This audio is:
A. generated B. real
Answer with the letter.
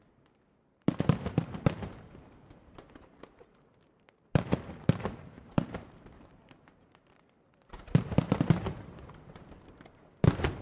A